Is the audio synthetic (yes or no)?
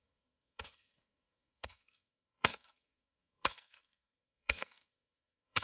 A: yes